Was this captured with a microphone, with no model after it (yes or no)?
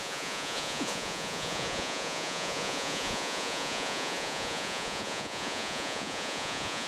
no